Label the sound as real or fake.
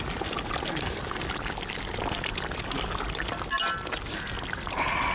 real